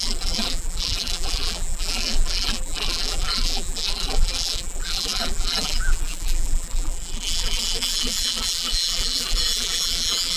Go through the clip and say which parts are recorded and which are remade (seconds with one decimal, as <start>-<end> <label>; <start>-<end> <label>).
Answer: 0.0-10.4 remade